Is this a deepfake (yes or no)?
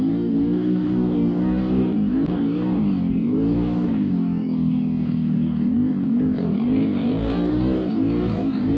yes